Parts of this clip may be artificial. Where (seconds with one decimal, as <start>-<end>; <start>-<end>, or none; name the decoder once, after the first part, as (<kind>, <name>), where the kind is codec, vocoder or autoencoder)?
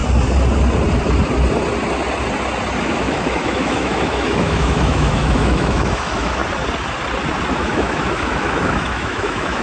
2.8-6.4 (autoencoder, DAC-VAE); 7.5-9.6